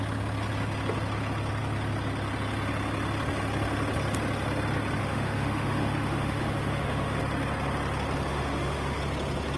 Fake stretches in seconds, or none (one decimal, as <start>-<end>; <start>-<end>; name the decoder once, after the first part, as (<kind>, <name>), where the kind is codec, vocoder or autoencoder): 5.0-7.2 (autoencoder, DAC-VAE); 8.3-9.0